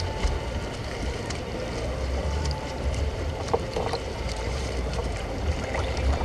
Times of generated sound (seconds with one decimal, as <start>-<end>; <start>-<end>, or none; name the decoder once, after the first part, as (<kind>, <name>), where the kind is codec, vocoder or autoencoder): 0.8-1.4 (vocoder, BigVGAN v2); 2.2-6.2